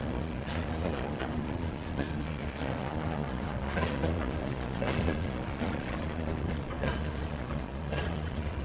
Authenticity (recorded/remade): remade